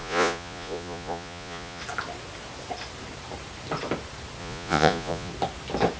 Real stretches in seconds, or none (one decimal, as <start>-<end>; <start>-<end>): 1.8-4.4; 5.3-6.0